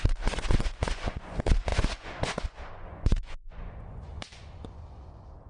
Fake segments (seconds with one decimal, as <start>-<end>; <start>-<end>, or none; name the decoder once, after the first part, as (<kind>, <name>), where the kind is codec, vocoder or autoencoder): 0.0-5.5 (vocoder, Vocos)